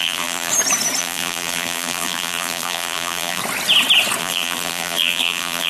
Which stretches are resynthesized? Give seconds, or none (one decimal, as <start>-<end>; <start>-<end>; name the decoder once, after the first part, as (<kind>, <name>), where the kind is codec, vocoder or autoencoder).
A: 0.0-0.5 (vocoder, BigVGAN v2); 1.0-3.4; 4.2-5.7